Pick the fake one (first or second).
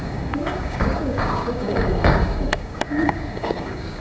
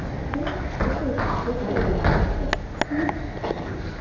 first